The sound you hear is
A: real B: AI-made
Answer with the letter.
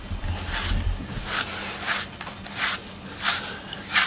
A